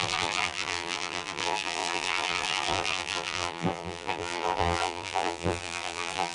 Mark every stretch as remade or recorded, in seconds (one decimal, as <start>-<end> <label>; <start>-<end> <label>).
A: 0.0-6.3 remade